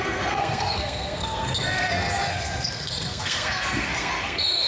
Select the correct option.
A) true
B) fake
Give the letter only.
B